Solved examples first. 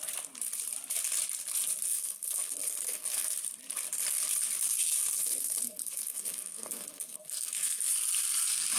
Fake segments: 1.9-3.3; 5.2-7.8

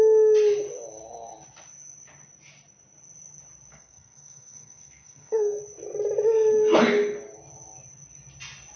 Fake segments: 3.7-5.6

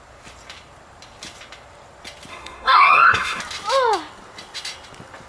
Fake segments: 2.3-3.4

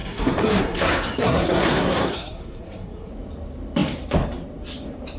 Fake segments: 0.0-3.1